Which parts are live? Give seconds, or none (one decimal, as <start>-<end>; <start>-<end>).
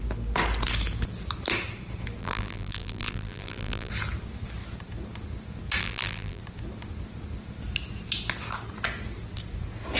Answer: 0.0-2.2; 3.9-5.8; 6.4-10.0